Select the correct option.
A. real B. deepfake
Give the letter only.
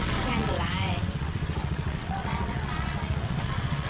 B